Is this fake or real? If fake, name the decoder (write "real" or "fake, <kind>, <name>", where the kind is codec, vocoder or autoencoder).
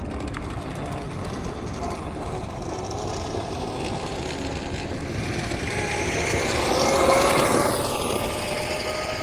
real